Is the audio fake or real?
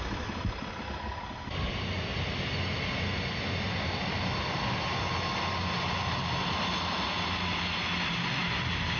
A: real